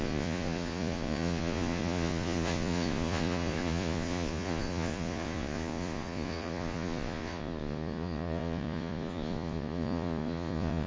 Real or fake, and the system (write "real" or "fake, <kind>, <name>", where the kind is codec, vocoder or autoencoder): fake, vocoder, Vocos